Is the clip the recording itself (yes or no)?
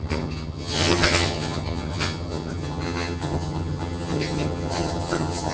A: no